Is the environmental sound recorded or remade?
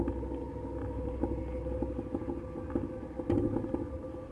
recorded